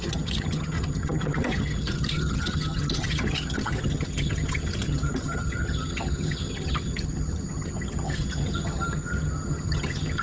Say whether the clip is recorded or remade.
remade